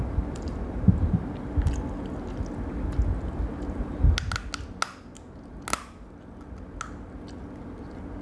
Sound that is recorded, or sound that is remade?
recorded